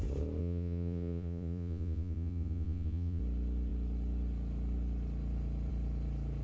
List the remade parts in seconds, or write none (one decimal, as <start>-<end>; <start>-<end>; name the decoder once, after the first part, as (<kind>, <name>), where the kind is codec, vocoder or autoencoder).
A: 0.4-3.2 (vocoder, Vocos)